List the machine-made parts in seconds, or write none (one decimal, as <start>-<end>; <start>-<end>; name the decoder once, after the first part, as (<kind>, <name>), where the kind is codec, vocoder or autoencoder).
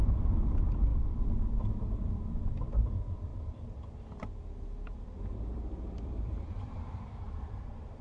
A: 3.3-7.5 (vocoder, BigVGAN v2)